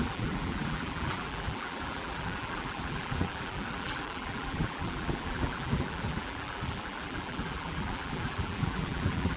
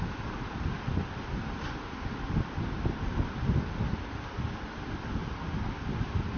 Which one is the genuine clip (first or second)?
second